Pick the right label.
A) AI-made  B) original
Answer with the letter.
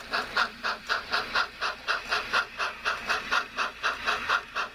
A